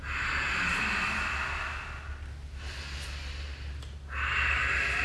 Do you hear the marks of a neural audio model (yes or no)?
no